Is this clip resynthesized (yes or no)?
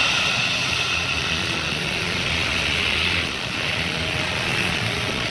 yes